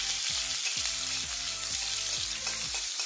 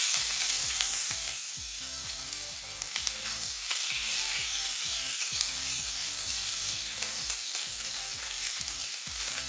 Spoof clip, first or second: second